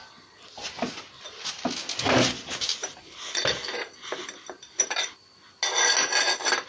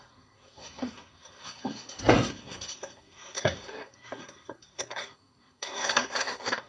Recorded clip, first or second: first